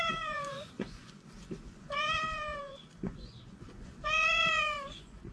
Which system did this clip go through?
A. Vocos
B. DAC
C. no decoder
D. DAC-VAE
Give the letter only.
A